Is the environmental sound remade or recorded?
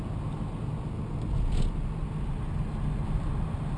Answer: recorded